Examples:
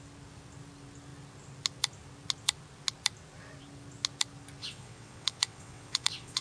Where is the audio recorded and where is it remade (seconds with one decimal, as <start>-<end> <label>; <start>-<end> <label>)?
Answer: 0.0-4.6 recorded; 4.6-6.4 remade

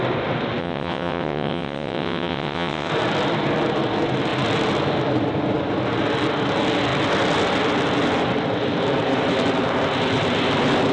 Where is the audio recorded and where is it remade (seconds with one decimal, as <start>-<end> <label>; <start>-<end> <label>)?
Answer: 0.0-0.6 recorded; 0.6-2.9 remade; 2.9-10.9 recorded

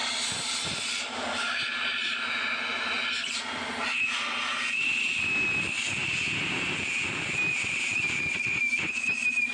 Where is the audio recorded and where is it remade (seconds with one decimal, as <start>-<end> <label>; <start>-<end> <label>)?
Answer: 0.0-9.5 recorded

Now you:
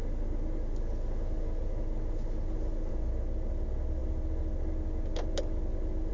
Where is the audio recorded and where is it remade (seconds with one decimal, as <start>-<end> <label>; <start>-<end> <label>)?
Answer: 0.0-6.1 recorded